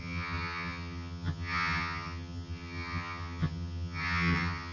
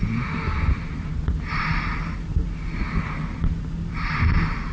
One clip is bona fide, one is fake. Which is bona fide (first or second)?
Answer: second